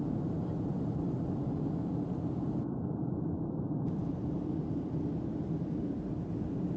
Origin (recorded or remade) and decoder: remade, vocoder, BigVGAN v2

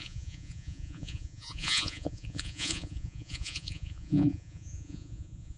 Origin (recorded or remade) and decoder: remade, vocoder, Vocos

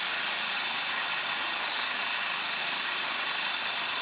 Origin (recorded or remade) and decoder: recorded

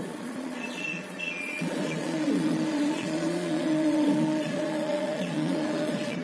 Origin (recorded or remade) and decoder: remade, vocoder, Vocos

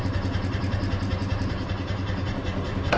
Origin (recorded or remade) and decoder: remade, vocoder, BigVGAN v2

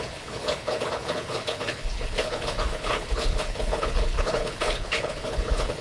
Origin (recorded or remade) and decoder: remade, codec, HILCodec